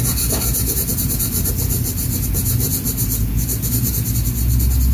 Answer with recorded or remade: recorded